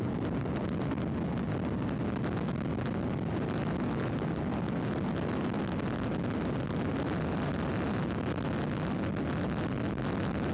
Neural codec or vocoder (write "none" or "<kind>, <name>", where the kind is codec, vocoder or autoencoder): none